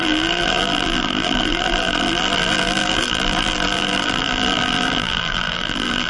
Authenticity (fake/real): fake